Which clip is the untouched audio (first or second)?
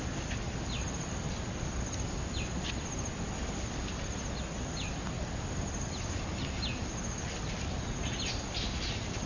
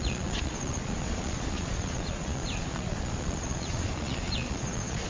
first